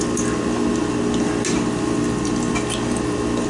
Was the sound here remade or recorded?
recorded